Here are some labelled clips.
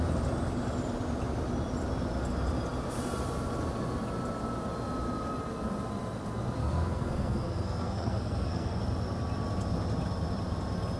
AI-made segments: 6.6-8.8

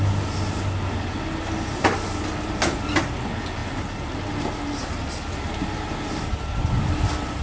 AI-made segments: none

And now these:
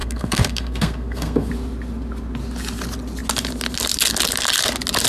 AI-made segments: 0.0-1.5

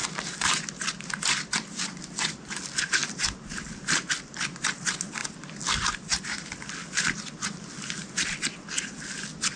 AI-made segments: none

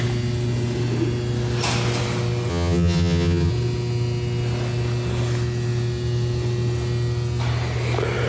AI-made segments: 2.5-3.5

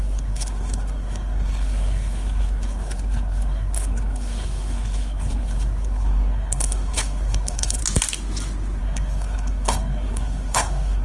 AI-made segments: 0.0-7.8; 8.8-11.0

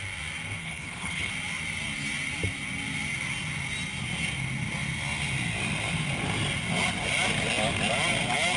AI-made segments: 0.6-1.3

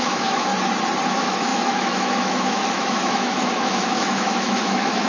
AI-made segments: 0.0-0.5; 1.1-5.1